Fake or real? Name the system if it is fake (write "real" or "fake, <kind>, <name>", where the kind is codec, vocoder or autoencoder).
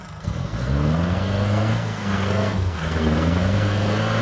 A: fake, codec, SNAC